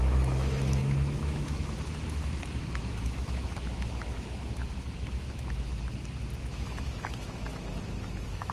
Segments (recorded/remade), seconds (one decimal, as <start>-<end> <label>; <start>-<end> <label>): 0.0-5.7 remade; 5.7-6.4 recorded; 6.4-8.5 remade